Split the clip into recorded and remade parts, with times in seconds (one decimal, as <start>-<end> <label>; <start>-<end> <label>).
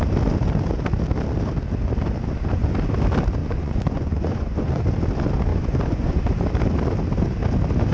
0.0-3.4 recorded; 3.4-4.8 remade; 4.8-5.5 recorded; 5.5-6.2 remade; 6.2-7.9 recorded